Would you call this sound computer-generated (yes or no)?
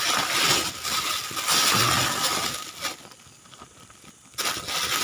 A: no